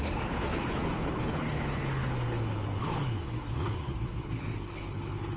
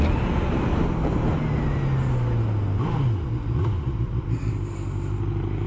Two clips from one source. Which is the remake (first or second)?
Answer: first